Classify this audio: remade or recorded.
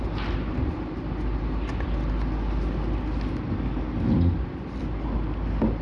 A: recorded